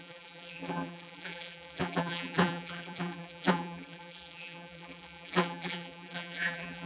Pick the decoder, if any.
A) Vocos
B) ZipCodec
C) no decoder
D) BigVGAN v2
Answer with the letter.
D